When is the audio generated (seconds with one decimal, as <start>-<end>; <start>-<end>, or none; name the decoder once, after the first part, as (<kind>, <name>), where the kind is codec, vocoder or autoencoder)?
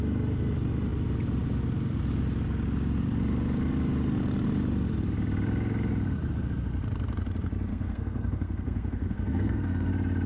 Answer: 7.7-9.9 (codec, SNAC)